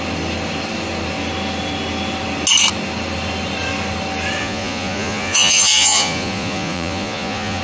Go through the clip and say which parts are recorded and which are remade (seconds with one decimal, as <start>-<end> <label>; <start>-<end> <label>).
0.0-4.4 recorded; 4.4-7.6 remade